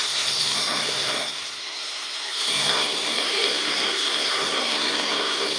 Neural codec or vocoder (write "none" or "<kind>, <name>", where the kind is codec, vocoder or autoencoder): codec, SNAC